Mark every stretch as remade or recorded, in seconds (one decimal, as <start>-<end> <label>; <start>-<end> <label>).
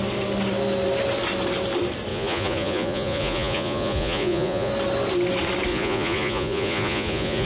0.0-2.1 recorded; 2.1-4.7 remade; 4.7-5.7 recorded; 5.7-7.5 remade